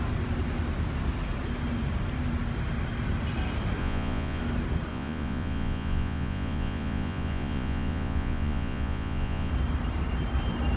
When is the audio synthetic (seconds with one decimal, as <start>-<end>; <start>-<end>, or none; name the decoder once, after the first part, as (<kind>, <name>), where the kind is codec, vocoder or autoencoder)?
3.8-4.4 (vocoder, Vocos); 4.9-9.5